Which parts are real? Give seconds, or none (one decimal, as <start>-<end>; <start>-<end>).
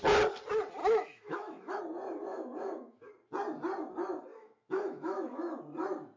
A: 0.0-0.8; 1.8-2.3; 3.1-4.3; 5.6-6.2